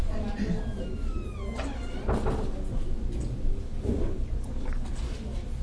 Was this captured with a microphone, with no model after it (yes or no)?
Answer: yes